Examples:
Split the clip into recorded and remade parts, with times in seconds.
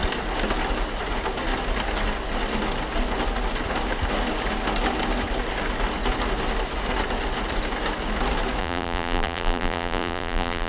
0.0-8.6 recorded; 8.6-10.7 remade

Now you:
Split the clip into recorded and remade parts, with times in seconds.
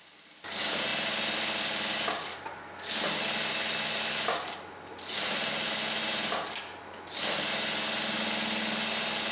0.0-9.3 recorded